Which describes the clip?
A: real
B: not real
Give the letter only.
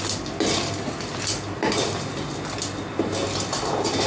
A